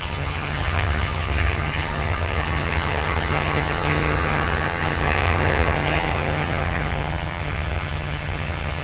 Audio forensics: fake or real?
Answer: fake